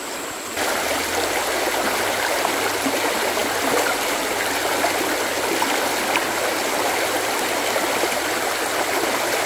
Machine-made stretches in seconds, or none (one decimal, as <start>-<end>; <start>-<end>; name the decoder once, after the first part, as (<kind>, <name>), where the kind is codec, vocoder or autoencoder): none